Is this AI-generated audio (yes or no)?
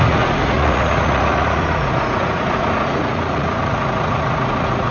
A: yes